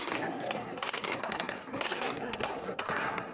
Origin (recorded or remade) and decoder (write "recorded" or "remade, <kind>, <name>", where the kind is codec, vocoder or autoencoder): remade, codec, SNAC